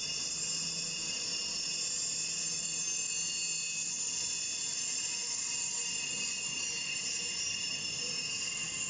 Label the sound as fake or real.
real